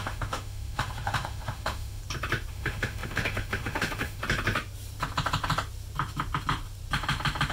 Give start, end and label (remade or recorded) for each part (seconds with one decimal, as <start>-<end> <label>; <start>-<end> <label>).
0.0-2.0 remade; 2.0-2.5 recorded; 2.5-4.2 remade; 4.2-7.5 recorded